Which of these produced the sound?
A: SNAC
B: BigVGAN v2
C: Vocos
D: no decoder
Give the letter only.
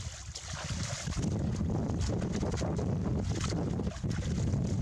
D